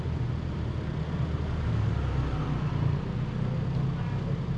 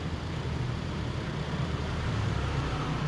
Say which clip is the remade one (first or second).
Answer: second